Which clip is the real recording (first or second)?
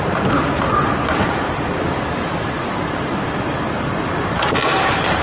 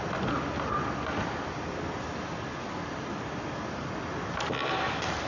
second